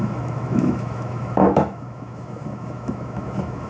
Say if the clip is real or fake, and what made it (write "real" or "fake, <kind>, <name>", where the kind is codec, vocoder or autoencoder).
fake, autoencoder, DAC-VAE